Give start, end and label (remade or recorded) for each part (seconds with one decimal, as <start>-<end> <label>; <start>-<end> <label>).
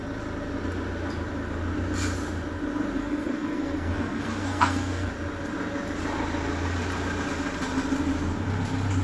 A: 0.0-3.0 recorded; 3.0-5.1 remade; 5.1-9.0 recorded